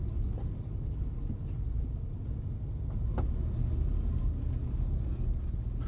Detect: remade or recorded recorded